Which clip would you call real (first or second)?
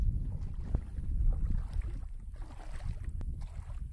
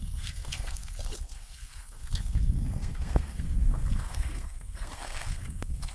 first